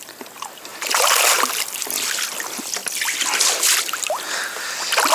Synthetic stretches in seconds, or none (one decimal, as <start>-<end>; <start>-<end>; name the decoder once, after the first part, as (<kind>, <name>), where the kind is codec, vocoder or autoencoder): 0.7-1.5 (vocoder, BigVGAN v2)